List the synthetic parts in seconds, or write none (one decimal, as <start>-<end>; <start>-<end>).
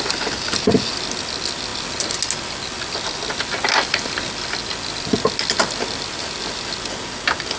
none